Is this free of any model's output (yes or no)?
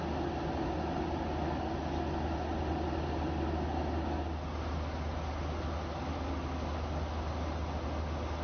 yes